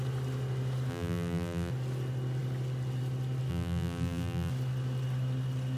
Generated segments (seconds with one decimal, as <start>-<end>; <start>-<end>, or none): 0.9-1.7; 3.5-4.5